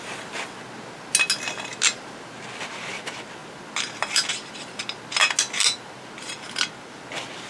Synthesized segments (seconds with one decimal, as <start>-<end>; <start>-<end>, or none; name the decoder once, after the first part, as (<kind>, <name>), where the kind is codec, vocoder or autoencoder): none